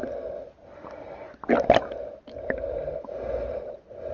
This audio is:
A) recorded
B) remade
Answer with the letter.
A